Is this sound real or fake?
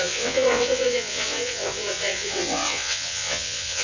fake